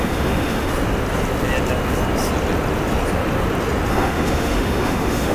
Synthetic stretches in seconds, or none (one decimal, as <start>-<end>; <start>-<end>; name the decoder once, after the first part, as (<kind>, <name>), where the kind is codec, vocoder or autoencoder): 0.0-0.7 (autoencoder, DAC-VAE); 3.9-5.3